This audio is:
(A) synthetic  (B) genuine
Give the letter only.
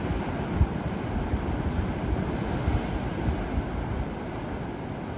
B